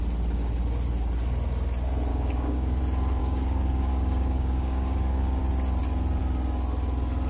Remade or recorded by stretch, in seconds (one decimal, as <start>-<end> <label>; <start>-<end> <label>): 0.0-2.1 recorded; 2.1-2.8 remade; 2.8-3.2 recorded; 3.2-5.4 remade; 5.4-7.3 recorded